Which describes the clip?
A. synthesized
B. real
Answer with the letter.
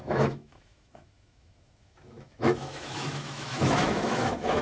A